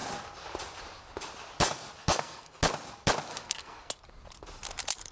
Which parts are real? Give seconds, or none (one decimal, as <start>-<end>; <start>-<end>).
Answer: 0.0-2.0; 2.5-3.3; 3.9-5.1